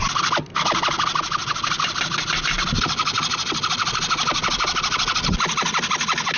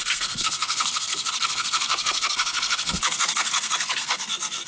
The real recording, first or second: first